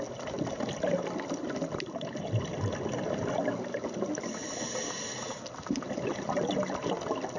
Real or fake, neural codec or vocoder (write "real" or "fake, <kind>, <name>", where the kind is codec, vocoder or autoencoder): real